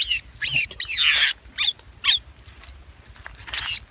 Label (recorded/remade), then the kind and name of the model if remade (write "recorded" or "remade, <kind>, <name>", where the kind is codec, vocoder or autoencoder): recorded